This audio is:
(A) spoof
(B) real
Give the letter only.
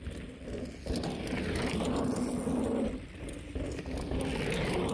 B